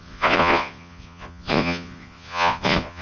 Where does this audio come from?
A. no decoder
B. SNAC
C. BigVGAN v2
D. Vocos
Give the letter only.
D